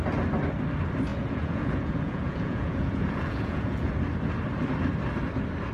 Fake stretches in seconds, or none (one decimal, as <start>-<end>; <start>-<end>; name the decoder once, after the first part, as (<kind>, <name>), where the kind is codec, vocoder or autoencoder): 1.1-3.9 (vocoder, Vocos)